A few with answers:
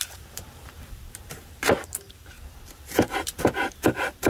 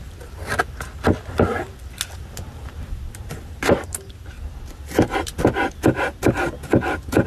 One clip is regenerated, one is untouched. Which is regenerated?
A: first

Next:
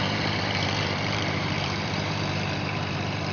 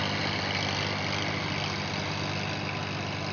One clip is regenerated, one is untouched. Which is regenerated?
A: first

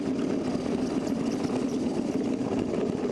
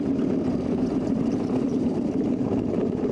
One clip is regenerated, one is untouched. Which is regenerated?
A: second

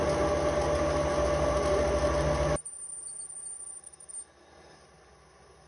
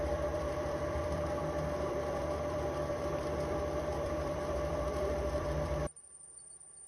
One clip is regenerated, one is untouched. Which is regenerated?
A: second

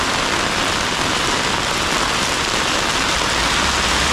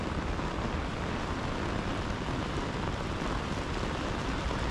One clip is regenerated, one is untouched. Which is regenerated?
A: second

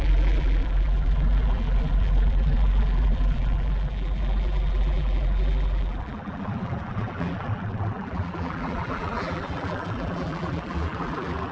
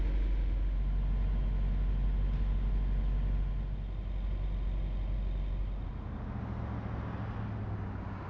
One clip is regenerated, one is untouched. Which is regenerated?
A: first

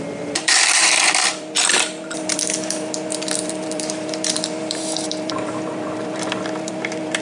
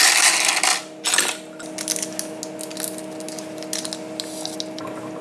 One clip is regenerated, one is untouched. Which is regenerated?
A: first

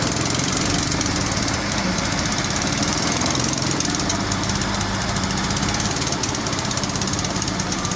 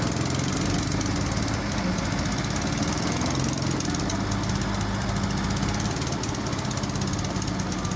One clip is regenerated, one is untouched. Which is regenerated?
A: first